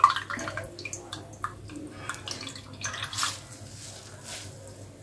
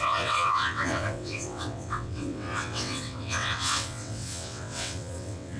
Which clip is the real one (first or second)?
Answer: first